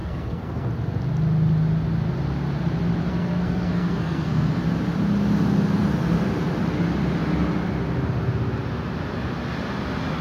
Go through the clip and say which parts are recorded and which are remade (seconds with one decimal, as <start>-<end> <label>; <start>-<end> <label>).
0.0-0.7 remade; 0.7-3.1 recorded; 3.1-4.6 remade; 4.6-10.2 recorded